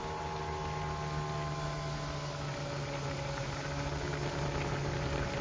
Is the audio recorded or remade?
recorded